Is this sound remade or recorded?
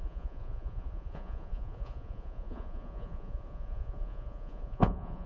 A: remade